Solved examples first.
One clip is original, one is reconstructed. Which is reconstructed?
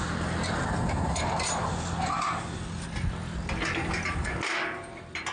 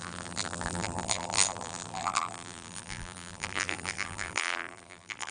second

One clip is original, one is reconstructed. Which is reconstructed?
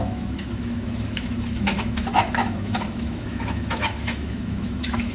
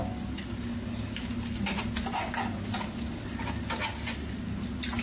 first